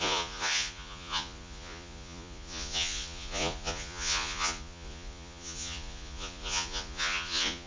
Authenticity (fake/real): fake